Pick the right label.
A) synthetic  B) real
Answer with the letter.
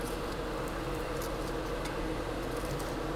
B